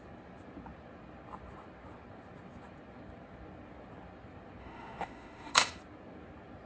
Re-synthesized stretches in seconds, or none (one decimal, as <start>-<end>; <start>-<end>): 4.6-5.8